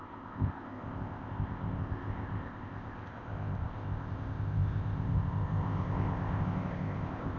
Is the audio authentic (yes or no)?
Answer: no